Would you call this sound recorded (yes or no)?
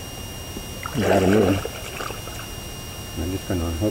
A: yes